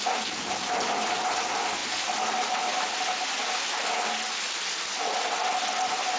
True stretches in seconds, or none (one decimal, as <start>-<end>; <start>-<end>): 0.0-6.2